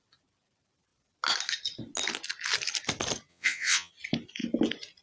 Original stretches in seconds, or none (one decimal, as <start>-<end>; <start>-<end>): 0.0-3.3; 3.9-5.0